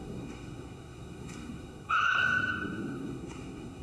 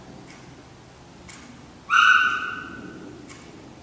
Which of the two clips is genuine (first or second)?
second